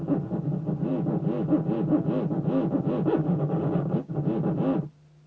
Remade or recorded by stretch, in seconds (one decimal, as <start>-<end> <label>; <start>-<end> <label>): 0.0-3.2 recorded; 3.2-4.1 remade; 4.1-5.3 recorded